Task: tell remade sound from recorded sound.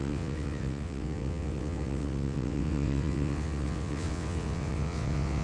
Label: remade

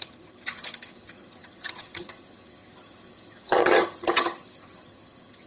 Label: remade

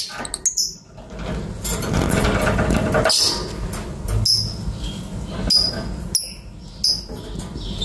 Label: recorded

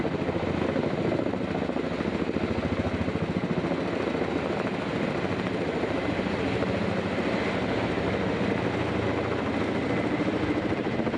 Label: recorded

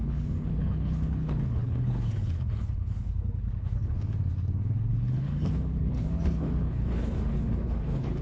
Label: remade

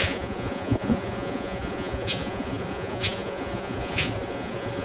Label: remade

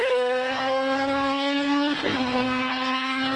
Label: remade